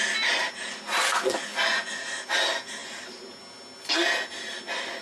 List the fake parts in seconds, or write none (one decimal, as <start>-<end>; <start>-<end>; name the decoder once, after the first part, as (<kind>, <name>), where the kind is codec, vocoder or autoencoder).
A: none